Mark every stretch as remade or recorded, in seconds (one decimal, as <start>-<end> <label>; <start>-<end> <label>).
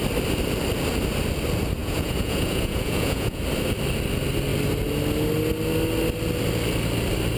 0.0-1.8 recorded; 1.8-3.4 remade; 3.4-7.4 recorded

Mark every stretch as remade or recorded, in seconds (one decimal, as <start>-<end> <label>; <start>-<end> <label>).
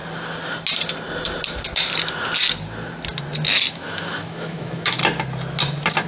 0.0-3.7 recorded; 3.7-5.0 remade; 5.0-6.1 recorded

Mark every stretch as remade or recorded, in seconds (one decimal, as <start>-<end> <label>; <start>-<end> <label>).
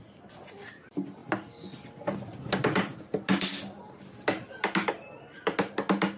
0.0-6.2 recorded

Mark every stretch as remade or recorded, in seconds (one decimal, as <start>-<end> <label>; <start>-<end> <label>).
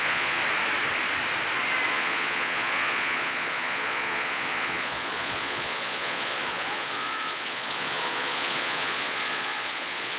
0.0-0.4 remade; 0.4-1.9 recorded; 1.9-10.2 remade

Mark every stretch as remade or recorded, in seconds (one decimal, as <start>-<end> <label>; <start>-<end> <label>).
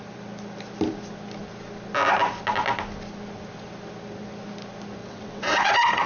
0.0-5.0 recorded; 5.0-6.1 remade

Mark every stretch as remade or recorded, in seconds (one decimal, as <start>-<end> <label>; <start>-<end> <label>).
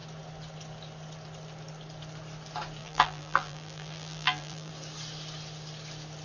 0.0-2.8 recorded; 2.8-4.7 remade; 4.7-6.2 recorded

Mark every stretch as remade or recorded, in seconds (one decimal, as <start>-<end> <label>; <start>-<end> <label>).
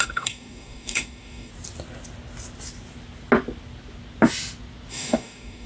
0.0-1.5 remade; 1.5-4.9 recorded; 4.9-5.7 remade